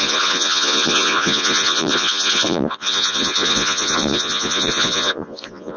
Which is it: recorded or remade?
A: remade